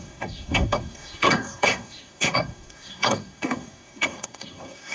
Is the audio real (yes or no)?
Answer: no